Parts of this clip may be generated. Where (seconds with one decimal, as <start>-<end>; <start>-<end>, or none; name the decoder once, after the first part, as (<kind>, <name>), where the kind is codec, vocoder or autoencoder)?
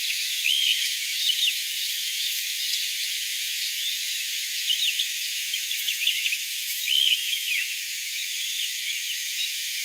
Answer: 0.0-9.8 (autoencoder, DAC-VAE)